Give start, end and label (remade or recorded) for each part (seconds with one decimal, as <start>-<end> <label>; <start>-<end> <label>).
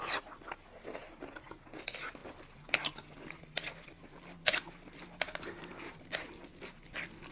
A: 0.0-7.3 recorded